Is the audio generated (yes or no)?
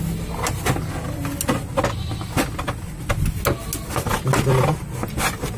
no